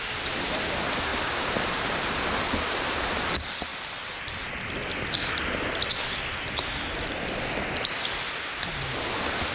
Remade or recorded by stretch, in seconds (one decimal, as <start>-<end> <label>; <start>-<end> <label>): 0.0-3.7 recorded; 3.7-4.6 remade; 4.6-9.5 recorded